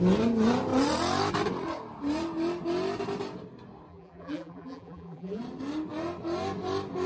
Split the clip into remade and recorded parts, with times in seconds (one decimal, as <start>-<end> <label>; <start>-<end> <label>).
0.0-3.9 recorded; 3.9-5.4 remade; 5.4-7.1 recorded